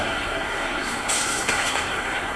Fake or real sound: fake